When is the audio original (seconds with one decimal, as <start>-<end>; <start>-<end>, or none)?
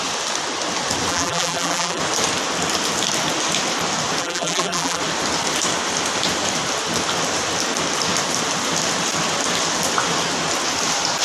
0.0-1.1; 2.0-4.2; 5.0-11.2